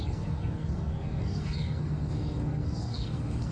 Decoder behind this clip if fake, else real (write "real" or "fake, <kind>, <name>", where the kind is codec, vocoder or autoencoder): fake, codec, SNAC